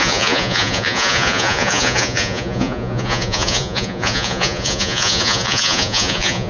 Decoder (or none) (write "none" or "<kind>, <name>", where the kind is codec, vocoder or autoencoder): vocoder, Vocos